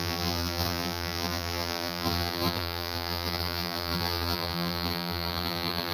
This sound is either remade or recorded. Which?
remade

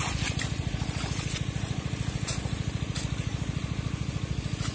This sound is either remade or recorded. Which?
recorded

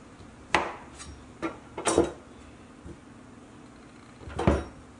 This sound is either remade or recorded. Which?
recorded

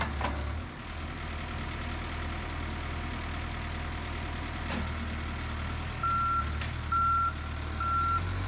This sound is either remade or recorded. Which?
recorded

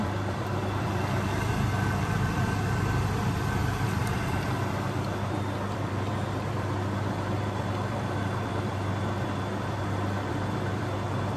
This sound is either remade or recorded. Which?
remade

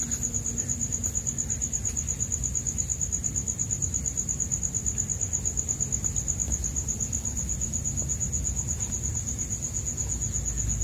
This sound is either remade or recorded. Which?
recorded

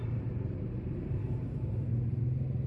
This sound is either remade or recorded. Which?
remade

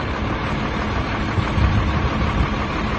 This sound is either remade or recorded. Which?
recorded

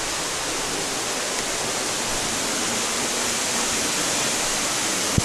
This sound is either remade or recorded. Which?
recorded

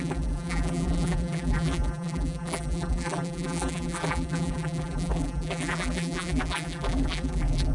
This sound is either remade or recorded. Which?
remade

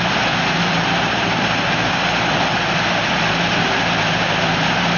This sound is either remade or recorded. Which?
remade